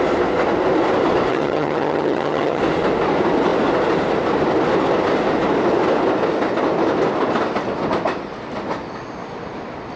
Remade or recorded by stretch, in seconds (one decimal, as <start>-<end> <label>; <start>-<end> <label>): 0.0-1.3 recorded; 1.3-2.6 remade; 2.6-10.0 recorded